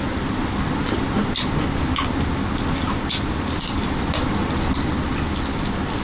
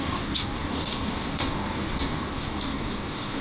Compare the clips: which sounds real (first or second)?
first